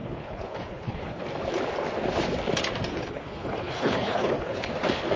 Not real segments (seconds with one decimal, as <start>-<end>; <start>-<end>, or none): 0.0-1.2; 2.9-4.7